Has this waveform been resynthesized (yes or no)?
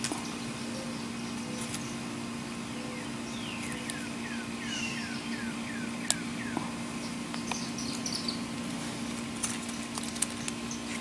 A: no